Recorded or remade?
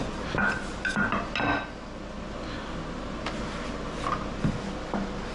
recorded